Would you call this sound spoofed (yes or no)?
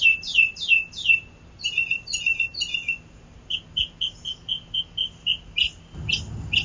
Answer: no